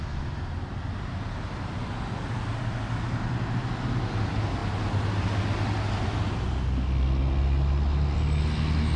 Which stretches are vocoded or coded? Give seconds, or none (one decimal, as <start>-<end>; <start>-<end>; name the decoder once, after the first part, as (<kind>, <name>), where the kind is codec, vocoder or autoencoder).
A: none